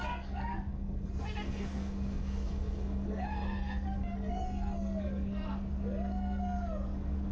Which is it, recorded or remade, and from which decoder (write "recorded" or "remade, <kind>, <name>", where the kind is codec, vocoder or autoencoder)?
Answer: remade, codec, SNAC